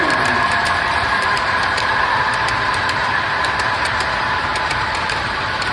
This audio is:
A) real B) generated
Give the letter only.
B